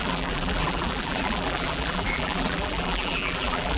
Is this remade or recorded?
remade